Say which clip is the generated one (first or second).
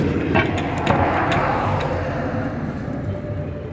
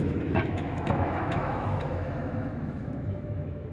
second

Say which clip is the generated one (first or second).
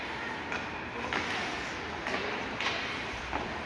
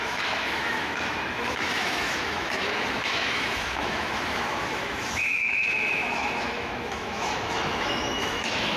second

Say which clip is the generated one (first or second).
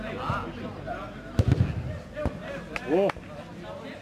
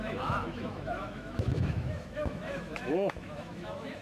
second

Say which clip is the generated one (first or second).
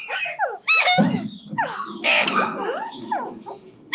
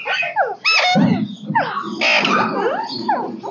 first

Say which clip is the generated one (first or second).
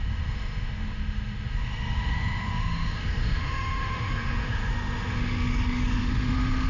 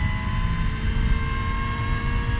first